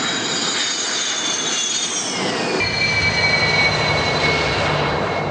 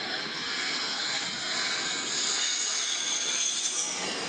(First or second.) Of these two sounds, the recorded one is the first